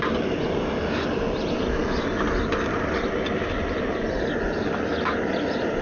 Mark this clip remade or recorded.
recorded